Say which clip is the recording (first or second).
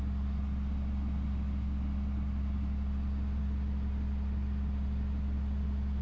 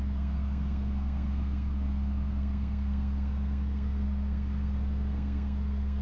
first